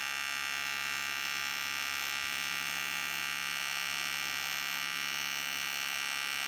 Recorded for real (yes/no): yes